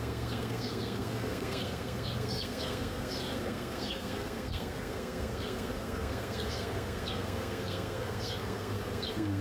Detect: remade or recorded remade